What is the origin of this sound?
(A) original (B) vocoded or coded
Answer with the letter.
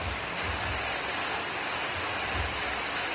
A